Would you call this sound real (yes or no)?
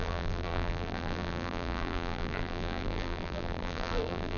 no